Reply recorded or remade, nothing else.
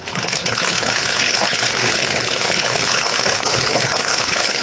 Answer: remade